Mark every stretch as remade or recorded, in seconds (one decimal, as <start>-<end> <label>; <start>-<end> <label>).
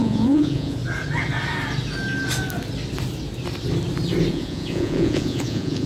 0.0-0.8 remade; 0.8-4.3 recorded; 4.3-5.9 remade